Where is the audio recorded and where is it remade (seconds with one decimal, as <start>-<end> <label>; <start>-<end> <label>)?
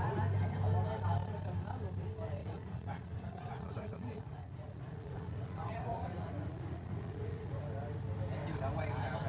0.0-2.4 recorded; 2.4-7.6 remade; 7.6-9.3 recorded